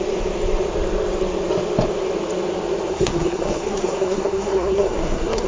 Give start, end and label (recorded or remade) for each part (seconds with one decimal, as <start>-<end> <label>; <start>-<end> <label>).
0.0-2.9 recorded; 2.9-5.5 remade